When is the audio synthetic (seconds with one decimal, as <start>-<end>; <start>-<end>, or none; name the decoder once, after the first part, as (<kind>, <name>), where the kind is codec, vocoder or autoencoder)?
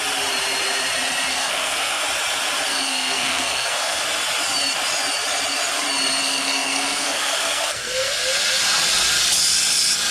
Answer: 1.3-2.0 (codec, SNAC); 2.7-4.0; 6.2-8.1